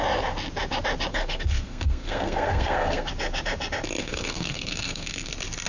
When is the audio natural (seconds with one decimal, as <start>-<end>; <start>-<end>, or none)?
0.0-1.1; 3.1-4.0; 5.3-5.7